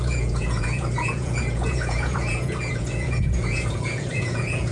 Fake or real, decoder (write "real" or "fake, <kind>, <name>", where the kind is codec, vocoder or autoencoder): fake, vocoder, Vocos